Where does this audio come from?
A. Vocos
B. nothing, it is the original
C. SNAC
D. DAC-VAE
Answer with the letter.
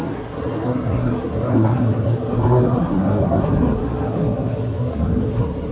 C